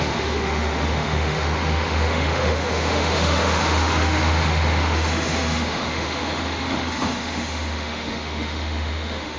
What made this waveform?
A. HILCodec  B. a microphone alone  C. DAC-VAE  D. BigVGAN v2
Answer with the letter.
C